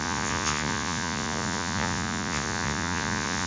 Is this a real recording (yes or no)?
no